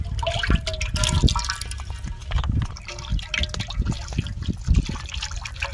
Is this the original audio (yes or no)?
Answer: yes